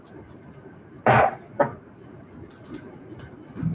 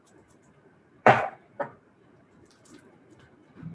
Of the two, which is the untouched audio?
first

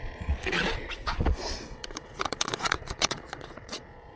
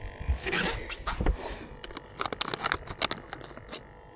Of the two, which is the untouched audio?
second